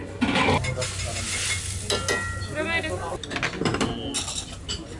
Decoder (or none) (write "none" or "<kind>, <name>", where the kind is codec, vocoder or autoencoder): none